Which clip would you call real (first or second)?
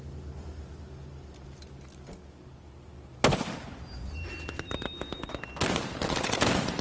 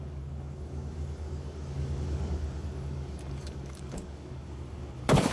first